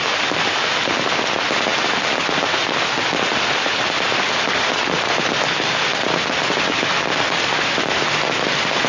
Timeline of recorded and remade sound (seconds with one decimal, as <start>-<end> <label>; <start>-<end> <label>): 0.0-8.9 recorded